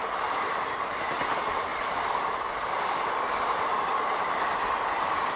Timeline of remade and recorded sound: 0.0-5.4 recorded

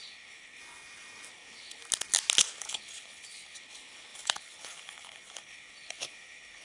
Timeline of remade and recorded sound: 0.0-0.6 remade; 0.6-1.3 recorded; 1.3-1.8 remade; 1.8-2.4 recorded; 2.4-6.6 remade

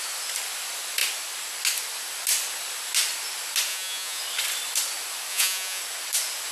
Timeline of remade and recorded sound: 0.0-3.7 recorded; 3.7-4.2 remade; 4.2-5.3 recorded; 5.3-5.8 remade; 5.8-6.5 recorded

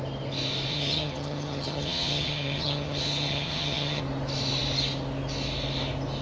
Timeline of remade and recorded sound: 0.0-0.7 recorded; 0.7-4.0 remade; 4.0-6.2 recorded

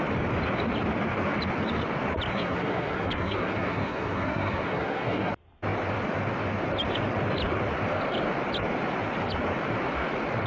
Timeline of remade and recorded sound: 0.0-2.3 recorded; 2.3-5.3 remade; 5.3-10.5 recorded

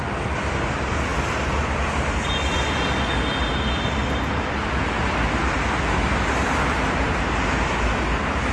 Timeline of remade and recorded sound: 0.0-8.5 recorded

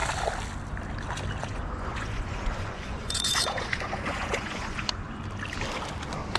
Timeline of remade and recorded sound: 0.0-1.4 recorded; 1.4-5.2 remade; 5.2-6.4 recorded

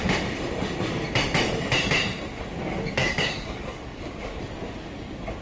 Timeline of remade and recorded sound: 0.0-3.0 recorded; 3.0-4.4 remade; 4.4-5.4 recorded